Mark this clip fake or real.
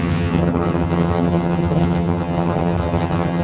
fake